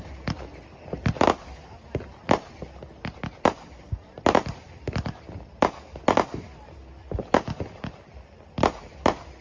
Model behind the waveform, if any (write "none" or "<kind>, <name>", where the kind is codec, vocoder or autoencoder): none